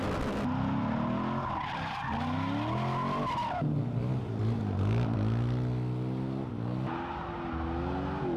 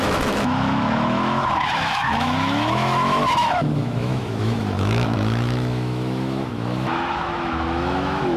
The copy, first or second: second